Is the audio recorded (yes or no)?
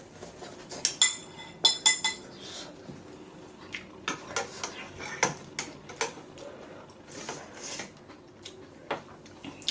yes